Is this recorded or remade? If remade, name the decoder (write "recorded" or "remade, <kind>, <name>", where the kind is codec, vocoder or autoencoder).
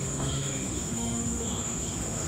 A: remade, autoencoder, DAC-VAE